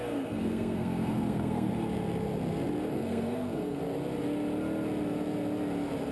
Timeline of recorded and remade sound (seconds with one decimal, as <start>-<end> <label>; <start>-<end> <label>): 0.0-1.7 remade; 1.7-2.9 recorded; 2.9-3.8 remade; 3.8-6.1 recorded